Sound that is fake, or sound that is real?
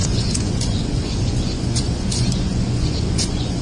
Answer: fake